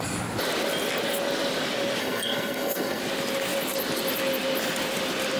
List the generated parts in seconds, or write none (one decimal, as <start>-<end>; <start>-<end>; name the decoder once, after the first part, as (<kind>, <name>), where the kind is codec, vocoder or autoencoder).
2.0-3.0 (codec, SNAC)